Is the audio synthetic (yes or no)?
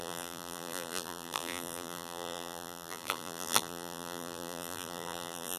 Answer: yes